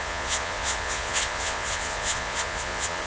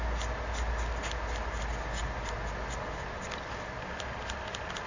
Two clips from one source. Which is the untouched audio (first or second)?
second